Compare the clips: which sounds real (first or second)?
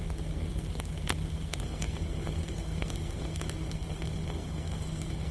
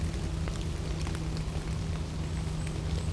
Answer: second